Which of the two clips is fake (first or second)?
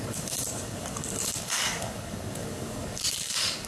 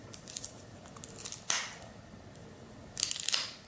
first